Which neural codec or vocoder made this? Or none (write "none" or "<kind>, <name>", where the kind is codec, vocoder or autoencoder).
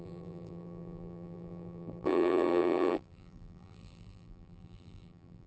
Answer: vocoder, BigVGAN v2